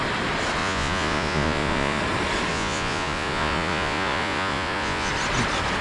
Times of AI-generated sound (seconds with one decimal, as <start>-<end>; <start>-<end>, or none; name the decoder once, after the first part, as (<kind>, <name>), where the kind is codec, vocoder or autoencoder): 0.6-2.0 (vocoder, Vocos); 2.5-5.1